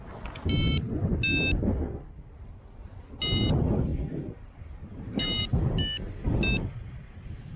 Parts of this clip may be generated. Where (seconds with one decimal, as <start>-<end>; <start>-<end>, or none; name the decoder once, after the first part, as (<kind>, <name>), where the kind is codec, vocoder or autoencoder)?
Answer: 3.9-5.4 (vocoder, BigVGAN v2)